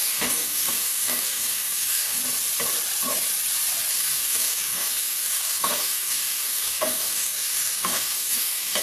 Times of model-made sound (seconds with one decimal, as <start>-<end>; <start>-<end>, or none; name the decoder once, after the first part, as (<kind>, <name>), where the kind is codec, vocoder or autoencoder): 0.0-2.2 (codec, DAC); 3.9-8.8